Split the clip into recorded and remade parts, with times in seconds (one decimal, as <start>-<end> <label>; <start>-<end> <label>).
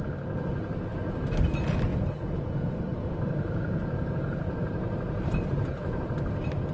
0.0-2.9 recorded; 2.9-6.1 remade; 6.1-6.7 recorded